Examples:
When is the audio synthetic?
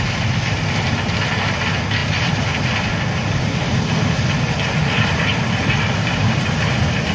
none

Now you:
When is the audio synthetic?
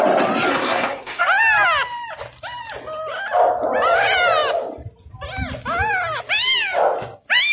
0.5-1.2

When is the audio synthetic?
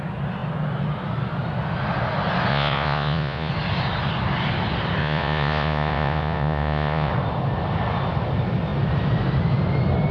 2.5-3.5; 5.0-7.1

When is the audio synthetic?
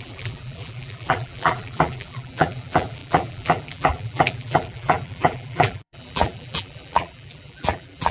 0.0-8.1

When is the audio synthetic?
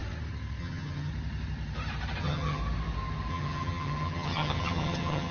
0.6-1.1; 2.2-2.6; 3.3-5.3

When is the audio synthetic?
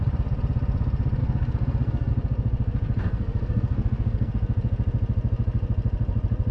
1.2-2.1; 3.0-4.3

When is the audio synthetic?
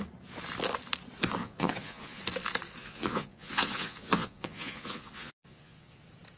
1.4-2.2; 2.8-6.0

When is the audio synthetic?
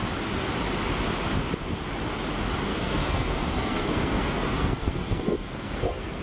2.7-6.2